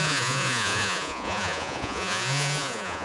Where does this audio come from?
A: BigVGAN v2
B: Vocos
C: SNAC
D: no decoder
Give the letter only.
B